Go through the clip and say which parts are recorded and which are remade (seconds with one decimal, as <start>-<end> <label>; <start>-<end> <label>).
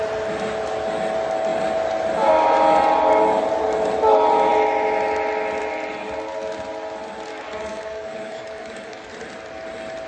0.0-7.3 recorded; 7.3-9.1 remade; 9.1-10.1 recorded